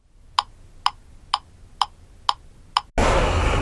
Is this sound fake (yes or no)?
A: no